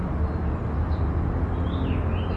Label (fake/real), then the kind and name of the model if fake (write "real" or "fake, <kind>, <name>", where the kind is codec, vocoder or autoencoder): real